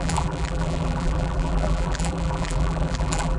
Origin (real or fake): fake